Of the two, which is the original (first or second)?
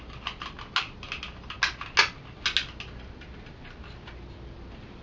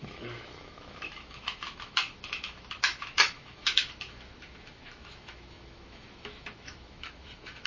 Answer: first